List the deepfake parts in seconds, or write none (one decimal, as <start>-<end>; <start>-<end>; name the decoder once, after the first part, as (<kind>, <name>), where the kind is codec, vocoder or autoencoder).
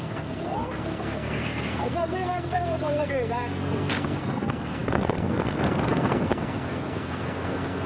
0.0-7.9 (codec, SNAC)